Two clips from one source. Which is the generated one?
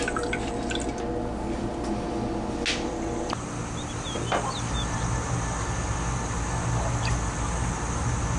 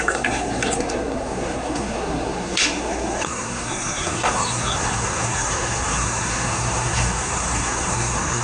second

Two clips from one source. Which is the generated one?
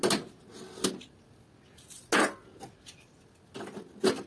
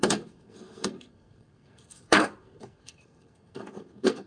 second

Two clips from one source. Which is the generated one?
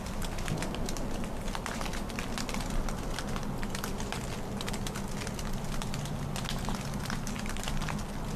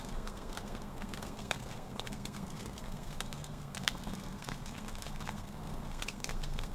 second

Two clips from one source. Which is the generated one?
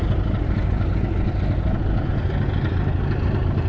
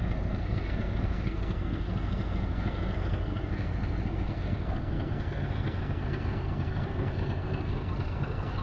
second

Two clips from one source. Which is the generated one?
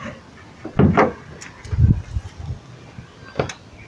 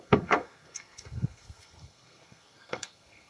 second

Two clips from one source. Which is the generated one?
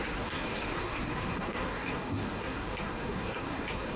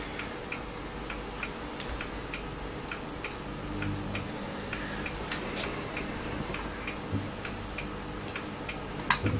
first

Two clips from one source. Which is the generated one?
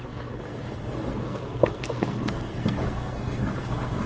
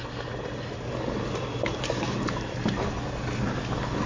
first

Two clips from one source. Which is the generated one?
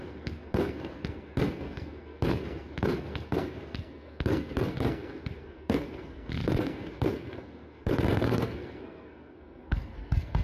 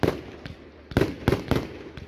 first